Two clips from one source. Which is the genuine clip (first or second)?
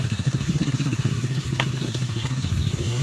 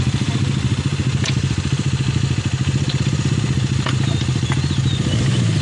second